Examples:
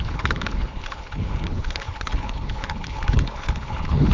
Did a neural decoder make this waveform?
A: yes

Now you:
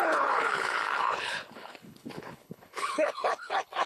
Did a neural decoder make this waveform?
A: yes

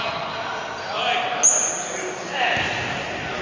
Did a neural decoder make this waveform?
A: no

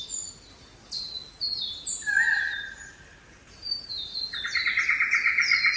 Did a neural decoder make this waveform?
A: no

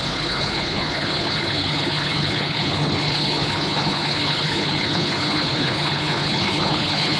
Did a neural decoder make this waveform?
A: yes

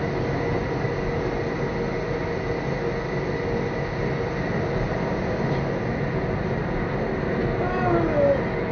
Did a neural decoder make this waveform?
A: no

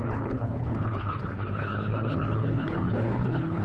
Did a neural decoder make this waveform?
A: yes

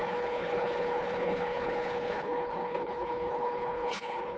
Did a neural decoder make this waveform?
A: yes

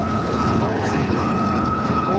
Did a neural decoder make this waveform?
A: yes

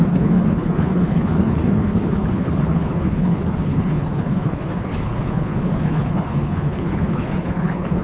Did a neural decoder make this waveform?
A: yes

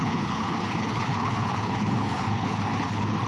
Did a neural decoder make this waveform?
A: yes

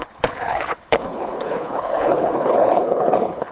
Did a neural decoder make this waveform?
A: yes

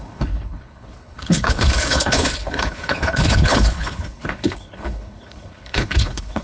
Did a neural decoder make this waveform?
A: yes